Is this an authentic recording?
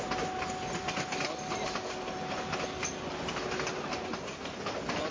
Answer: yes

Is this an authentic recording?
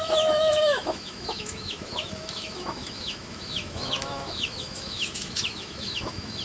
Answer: no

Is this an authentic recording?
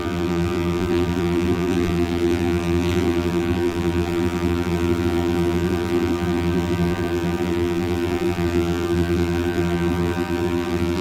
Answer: no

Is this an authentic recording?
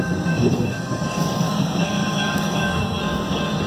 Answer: no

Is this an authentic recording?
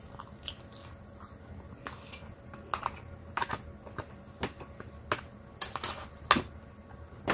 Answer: yes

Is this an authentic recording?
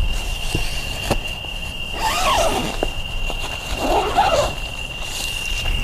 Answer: yes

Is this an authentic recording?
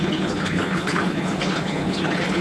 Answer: no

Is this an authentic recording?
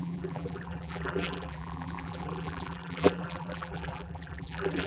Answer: no